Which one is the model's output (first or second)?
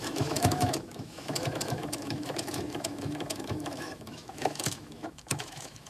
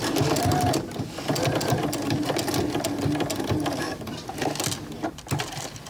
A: first